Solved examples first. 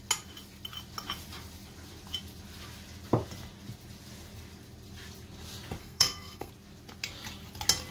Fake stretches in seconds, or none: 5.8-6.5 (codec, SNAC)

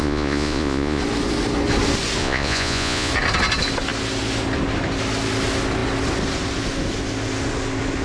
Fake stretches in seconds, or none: 0.0-1.0 (vocoder, Vocos); 2.2-3.1

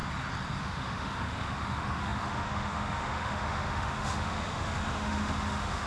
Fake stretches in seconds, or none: 0.6-5.9 (autoencoder, DAC-VAE)